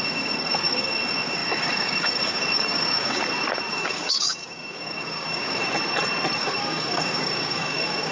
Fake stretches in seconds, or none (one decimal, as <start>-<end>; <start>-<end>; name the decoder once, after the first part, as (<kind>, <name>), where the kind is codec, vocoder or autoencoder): 0.0-3.2 (codec, DAC); 3.7-5.6; 6.4-8.1